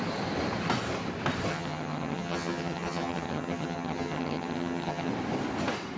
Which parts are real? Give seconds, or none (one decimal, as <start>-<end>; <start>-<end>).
0.0-1.5; 5.1-6.0

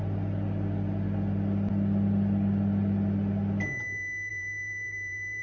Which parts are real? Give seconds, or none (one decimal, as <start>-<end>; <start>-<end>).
0.0-4.3